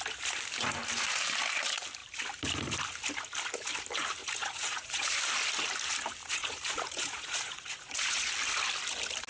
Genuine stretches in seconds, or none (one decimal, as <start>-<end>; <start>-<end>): 0.0-4.2; 5.2-6.2; 8.3-9.3